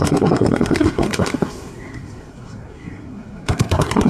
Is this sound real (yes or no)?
no